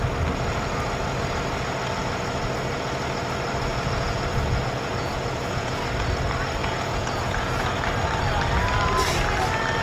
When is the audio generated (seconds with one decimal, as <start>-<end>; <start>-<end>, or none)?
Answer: 3.7-5.8; 6.6-7.9